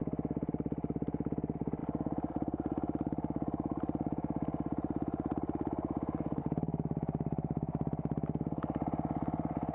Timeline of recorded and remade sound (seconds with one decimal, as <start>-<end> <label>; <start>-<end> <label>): 0.0-9.7 recorded